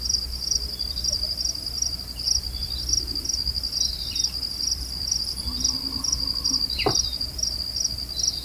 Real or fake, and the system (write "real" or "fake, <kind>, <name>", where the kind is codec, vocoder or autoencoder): fake, vocoder, BigVGAN v2